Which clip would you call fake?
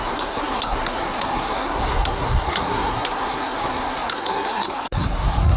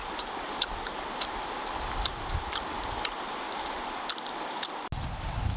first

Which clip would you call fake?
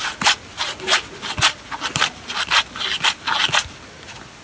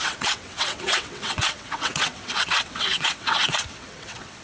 second